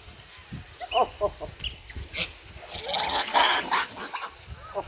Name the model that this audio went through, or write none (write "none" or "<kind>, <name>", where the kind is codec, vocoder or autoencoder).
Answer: none